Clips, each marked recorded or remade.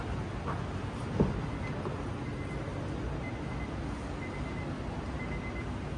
recorded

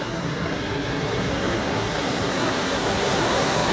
remade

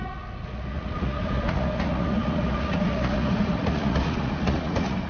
remade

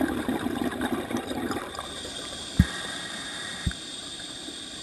remade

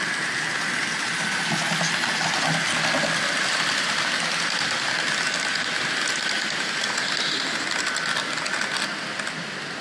recorded